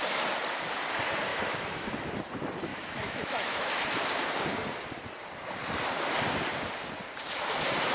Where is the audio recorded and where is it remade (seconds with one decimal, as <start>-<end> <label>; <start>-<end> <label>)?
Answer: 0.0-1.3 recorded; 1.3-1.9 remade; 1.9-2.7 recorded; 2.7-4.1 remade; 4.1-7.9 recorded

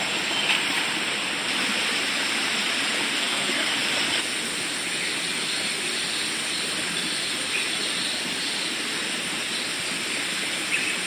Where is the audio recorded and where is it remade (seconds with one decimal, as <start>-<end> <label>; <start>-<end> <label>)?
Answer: 0.0-3.1 recorded; 3.1-3.7 remade; 3.7-11.1 recorded

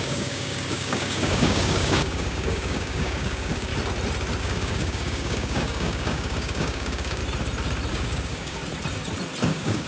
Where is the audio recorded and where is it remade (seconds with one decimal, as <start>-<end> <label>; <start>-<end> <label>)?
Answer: 0.0-3.7 remade; 3.7-4.4 recorded; 4.4-7.2 remade; 7.2-7.9 recorded; 7.9-8.6 remade; 8.6-9.4 recorded; 9.4-9.9 remade

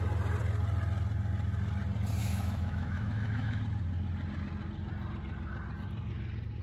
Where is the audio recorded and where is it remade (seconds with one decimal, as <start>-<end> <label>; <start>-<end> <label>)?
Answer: 0.0-2.2 recorded; 2.2-3.6 remade; 3.6-6.6 recorded